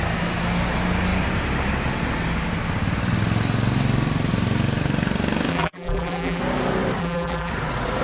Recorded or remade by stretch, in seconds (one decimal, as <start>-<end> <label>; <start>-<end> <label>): 0.0-5.5 recorded; 5.5-6.4 remade; 6.4-7.0 recorded; 7.0-7.5 remade; 7.5-8.0 recorded